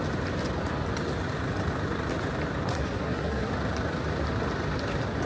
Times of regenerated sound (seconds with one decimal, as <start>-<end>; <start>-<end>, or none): 2.7-3.5